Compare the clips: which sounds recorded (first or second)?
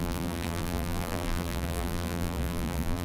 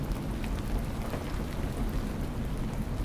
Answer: second